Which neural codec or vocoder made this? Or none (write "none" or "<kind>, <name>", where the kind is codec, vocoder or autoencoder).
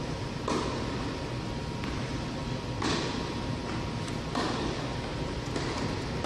none